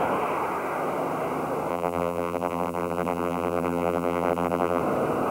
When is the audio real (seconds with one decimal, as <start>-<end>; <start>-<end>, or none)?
0.0-1.7; 4.8-5.3

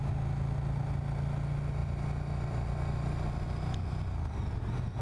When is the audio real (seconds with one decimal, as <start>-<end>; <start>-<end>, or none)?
0.0-5.0